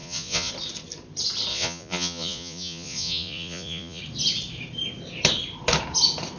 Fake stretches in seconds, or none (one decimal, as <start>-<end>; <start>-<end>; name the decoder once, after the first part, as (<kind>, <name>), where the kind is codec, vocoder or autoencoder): 0.0-0.5 (vocoder, Vocos); 1.5-4.0